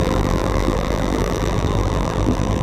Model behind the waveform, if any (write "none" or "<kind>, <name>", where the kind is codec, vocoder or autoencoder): vocoder, BigVGAN v2